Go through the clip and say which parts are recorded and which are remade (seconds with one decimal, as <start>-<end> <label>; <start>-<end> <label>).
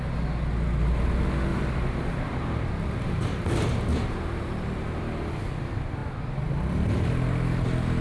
0.0-1.5 recorded; 1.5-5.0 remade; 5.0-8.0 recorded